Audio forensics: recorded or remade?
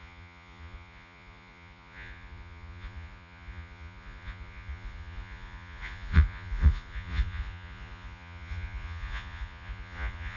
remade